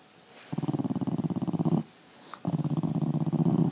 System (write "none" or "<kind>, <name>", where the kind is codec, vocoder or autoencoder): none